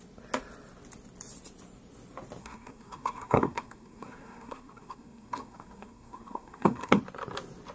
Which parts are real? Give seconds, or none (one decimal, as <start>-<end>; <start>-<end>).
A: 0.0-2.4; 7.0-7.7